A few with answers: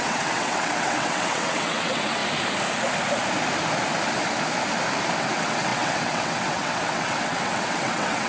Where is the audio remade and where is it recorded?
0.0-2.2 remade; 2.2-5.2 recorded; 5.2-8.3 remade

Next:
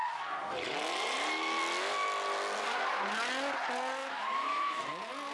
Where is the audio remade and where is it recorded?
0.0-4.0 recorded; 4.0-4.8 remade; 4.8-5.3 recorded

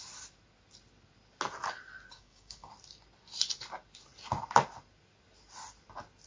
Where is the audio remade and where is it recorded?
0.0-2.1 recorded; 2.1-2.7 remade; 2.7-6.3 recorded

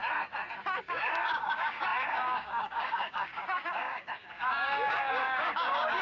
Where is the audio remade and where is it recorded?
0.0-0.8 recorded; 0.8-6.0 remade

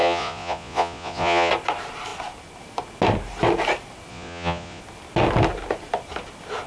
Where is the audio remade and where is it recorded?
0.0-1.5 remade; 1.5-4.1 recorded; 4.1-4.8 remade; 4.8-6.7 recorded